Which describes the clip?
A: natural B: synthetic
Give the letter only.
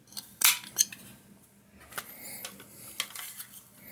A